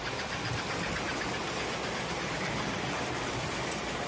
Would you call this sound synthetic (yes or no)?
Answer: no